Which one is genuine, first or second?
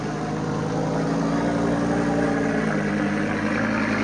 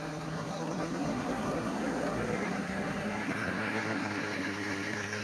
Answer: first